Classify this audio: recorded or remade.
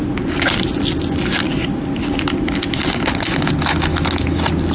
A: recorded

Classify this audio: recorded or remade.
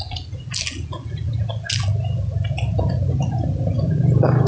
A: recorded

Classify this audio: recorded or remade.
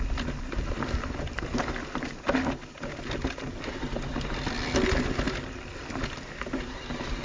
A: recorded